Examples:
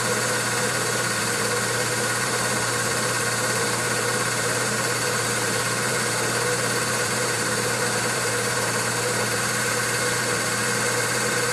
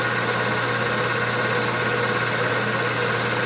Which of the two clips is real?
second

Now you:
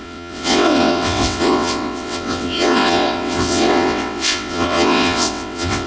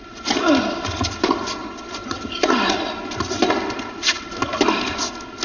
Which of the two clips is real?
second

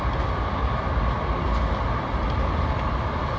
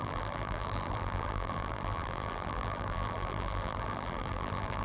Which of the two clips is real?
first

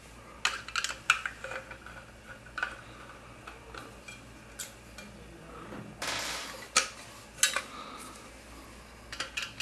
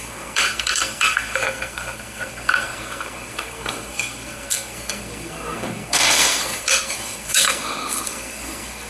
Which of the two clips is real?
first